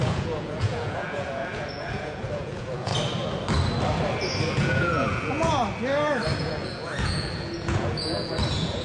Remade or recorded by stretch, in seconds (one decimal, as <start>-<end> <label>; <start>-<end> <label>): 0.0-2.9 remade; 2.9-4.5 recorded; 4.5-5.6 remade; 5.6-6.4 recorded; 6.4-8.8 remade